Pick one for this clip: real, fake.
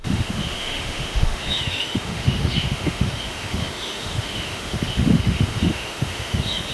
fake